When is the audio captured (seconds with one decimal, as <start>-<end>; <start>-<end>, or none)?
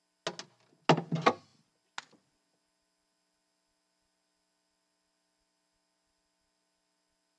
0.0-7.4